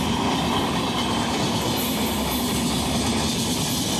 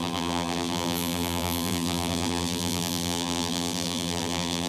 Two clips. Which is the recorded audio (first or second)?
first